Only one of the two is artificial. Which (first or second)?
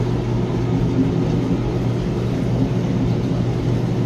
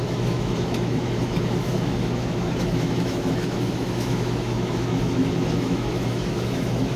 second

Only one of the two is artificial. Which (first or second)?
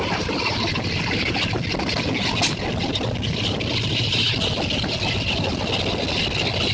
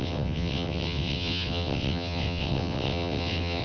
second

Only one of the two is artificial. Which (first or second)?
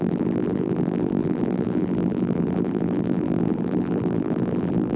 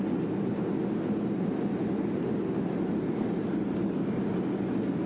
first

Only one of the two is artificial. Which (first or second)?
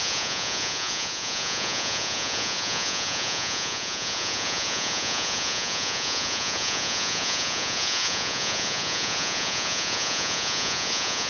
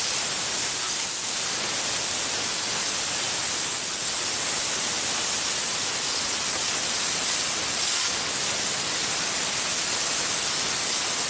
first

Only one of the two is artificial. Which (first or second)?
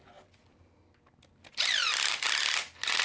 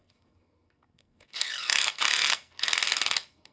second